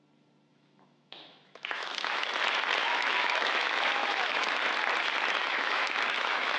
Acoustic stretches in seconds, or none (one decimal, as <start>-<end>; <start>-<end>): 0.0-0.5; 2.3-2.8; 4.6-5.4